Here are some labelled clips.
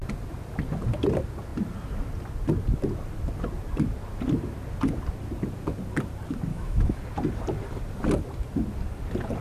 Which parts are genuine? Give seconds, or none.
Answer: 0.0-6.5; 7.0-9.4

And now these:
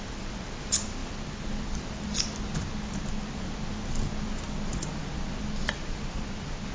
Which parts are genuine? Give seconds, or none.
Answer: 0.0-6.7

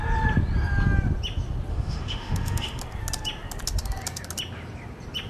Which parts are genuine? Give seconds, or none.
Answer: 0.0-1.7; 2.8-5.3

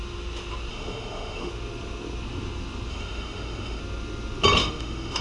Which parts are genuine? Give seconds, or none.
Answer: 0.0-0.7; 1.5-2.9; 3.8-4.6

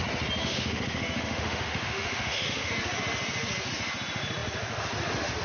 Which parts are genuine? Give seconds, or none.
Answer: 0.0-0.4; 2.7-5.4

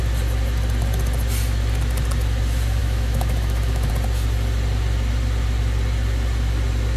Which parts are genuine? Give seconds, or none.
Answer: 0.0-2.8; 3.9-7.0

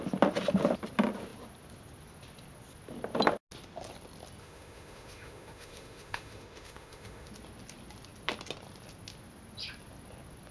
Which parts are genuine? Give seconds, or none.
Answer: 0.0-4.4; 7.3-10.5

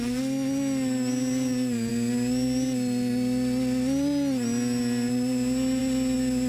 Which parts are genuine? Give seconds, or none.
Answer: 0.0-6.5